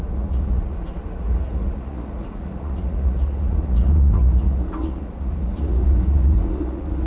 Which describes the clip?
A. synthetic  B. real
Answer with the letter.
A